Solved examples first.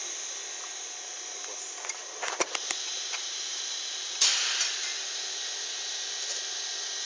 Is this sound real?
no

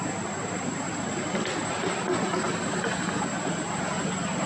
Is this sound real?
no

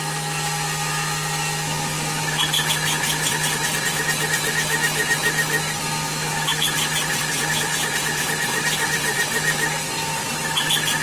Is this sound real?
yes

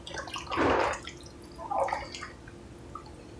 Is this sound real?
yes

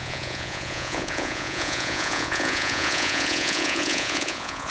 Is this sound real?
no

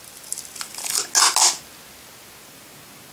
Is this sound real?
yes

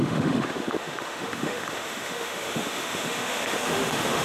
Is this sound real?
no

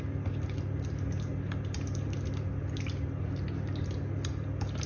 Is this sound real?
yes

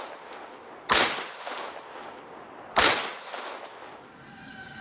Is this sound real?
yes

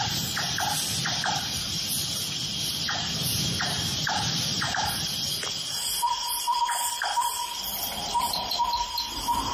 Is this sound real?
yes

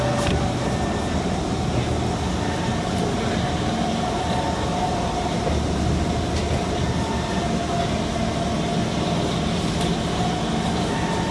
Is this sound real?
yes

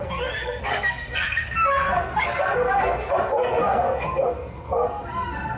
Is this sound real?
no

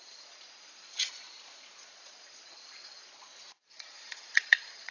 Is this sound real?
no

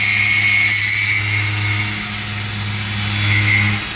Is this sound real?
yes